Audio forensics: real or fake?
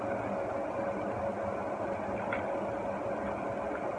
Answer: real